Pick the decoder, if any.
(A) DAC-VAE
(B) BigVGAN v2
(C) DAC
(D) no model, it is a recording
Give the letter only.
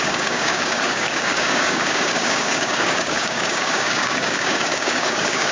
C